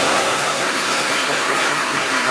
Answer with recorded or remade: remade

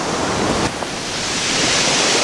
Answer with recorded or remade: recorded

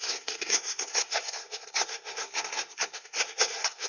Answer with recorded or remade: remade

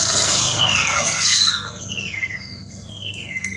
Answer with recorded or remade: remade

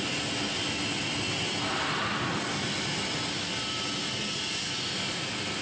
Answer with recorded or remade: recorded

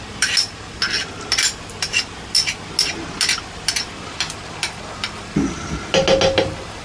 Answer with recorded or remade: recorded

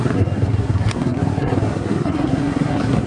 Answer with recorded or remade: remade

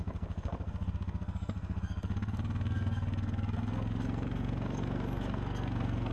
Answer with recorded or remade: remade